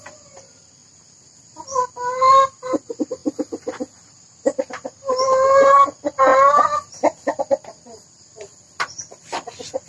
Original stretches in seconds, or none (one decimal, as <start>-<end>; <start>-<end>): 0.0-9.9

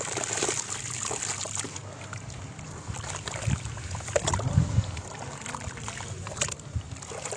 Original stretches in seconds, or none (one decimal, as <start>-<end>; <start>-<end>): 0.0-7.4

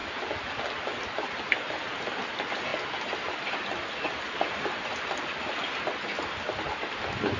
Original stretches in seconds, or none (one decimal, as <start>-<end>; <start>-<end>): 0.0-7.4

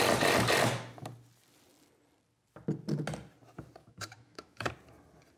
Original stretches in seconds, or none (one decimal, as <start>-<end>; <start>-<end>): 0.0-3.8; 4.7-5.4

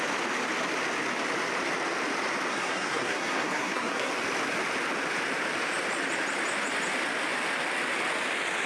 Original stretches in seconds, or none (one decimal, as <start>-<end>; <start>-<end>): 0.0-2.5; 4.1-8.7

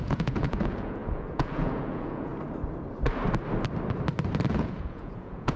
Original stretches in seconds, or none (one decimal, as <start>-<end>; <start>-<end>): 2.3-4.5